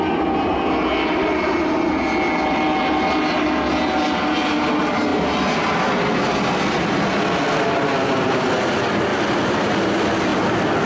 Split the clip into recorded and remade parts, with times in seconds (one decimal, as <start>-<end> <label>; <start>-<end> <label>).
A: 0.0-9.1 recorded; 9.1-9.7 remade; 9.7-10.3 recorded; 10.3-10.9 remade